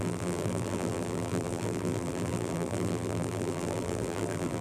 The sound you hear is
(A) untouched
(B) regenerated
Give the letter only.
B